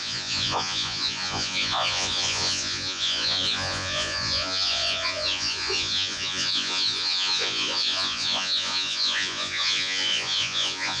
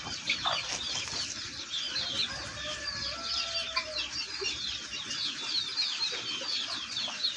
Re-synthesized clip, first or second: first